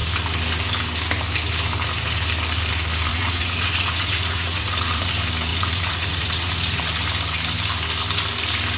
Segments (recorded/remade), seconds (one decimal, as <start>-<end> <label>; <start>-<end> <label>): 0.0-3.1 recorded; 3.1-5.1 remade; 5.1-5.5 recorded; 5.5-6.8 remade; 6.8-8.8 recorded